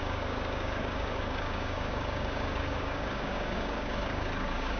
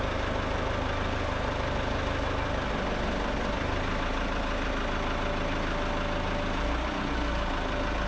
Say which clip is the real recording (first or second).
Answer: second